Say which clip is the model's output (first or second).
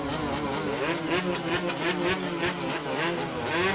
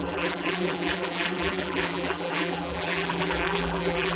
second